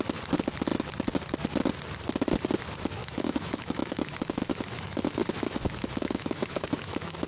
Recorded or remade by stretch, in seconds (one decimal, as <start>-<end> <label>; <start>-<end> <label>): 0.0-3.0 recorded; 3.0-7.3 remade